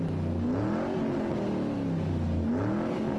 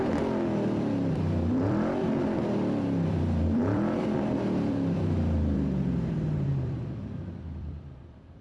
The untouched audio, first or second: first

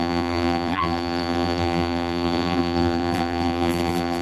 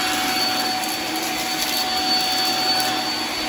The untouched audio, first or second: second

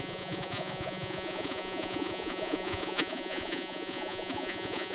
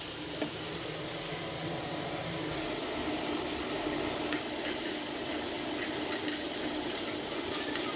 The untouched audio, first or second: second